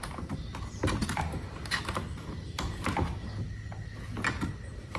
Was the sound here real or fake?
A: real